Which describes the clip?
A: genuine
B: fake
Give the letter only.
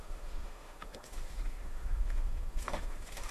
B